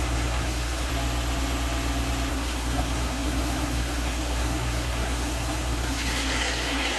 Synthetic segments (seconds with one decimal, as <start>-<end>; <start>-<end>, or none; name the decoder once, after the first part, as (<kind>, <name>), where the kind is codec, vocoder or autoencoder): 0.0-0.9 (codec, SNAC); 2.3-7.0